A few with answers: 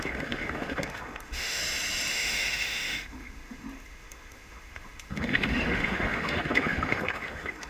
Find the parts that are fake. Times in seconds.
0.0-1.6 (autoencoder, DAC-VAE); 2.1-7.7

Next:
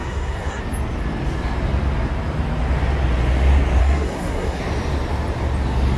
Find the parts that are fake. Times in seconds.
0.0-0.6 (codec, SNAC); 3.8-4.6

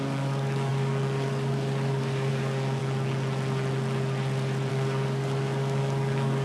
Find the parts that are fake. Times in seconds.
0.0-2.8 (codec, DAC); 4.7-6.4

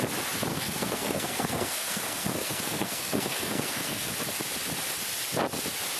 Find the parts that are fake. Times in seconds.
0.5-4.1 (codec, SNAC)

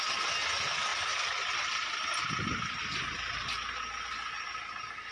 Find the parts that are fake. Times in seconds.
none

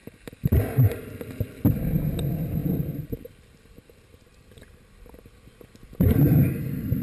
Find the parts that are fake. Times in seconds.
none

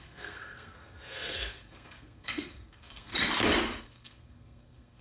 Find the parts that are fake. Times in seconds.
0.0-3.1 (codec, SNAC); 3.8-5.0

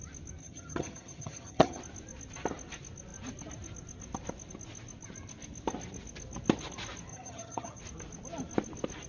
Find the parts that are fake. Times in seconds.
0.4-1.8 (vocoder, HiFi-GAN); 7.1-7.8